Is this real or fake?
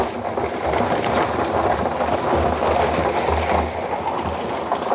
real